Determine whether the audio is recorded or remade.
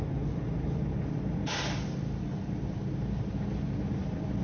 recorded